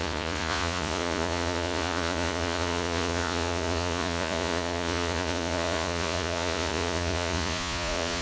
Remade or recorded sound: remade